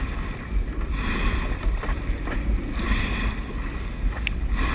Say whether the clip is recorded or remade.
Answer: recorded